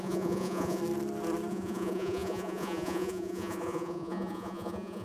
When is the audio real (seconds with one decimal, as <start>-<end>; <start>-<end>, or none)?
0.8-1.5